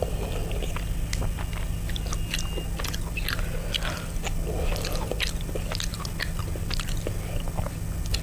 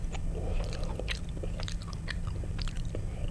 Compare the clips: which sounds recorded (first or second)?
first